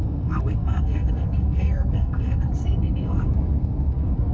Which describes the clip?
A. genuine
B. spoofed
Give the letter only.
B